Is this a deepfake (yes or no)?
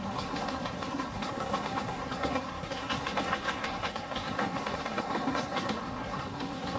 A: yes